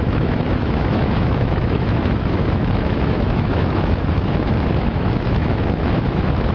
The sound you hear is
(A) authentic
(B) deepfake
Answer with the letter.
B